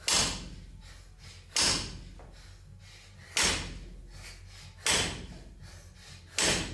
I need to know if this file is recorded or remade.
recorded